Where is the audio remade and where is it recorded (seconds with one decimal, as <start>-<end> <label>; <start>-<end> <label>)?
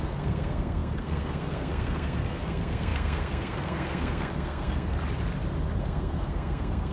0.0-4.9 remade; 4.9-5.8 recorded; 5.8-6.9 remade